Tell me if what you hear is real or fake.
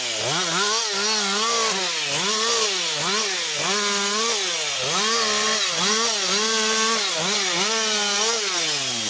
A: real